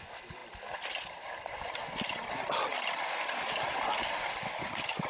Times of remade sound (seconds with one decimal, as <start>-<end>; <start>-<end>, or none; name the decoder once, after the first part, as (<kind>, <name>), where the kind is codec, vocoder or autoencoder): none